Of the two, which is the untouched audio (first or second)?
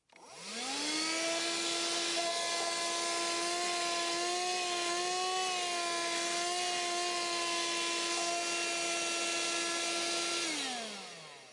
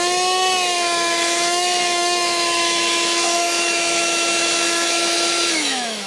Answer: first